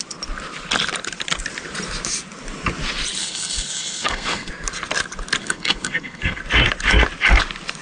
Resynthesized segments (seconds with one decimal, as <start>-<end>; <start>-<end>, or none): 3.2-4.5; 5.4-6.4